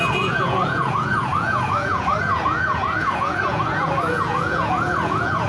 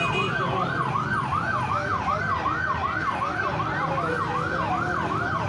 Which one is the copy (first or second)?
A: first